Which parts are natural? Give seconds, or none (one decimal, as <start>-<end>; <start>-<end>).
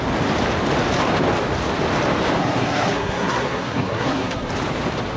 0.0-2.4; 4.5-5.2